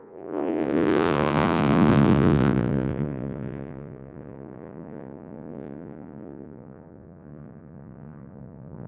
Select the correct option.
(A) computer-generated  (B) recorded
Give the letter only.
A